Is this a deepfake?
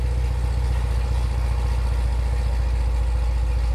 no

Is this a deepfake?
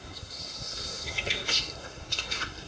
yes